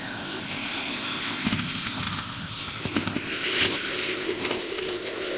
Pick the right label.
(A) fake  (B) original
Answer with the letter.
A